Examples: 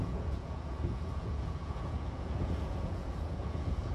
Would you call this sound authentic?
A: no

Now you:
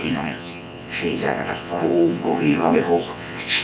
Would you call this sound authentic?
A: no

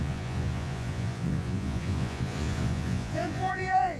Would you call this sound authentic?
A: no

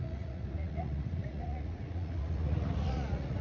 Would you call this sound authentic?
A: no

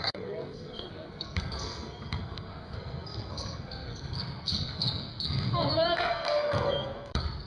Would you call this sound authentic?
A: no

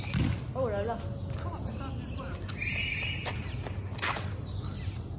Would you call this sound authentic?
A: yes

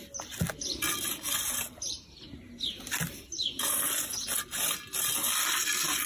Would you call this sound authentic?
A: yes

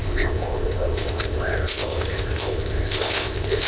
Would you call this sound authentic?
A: no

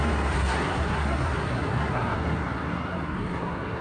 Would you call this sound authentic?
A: no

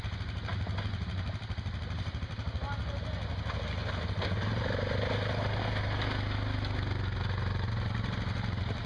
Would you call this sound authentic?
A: yes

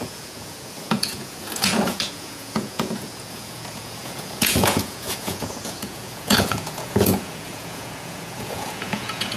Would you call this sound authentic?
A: no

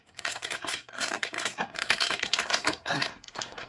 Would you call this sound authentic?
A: no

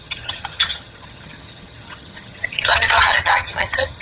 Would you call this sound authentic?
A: no